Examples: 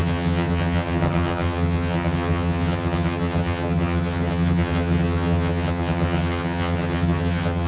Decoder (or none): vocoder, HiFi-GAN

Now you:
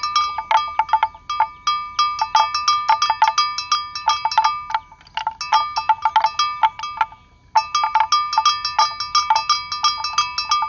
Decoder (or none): none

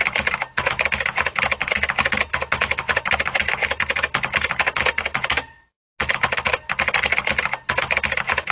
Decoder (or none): none